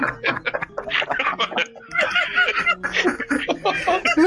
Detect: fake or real real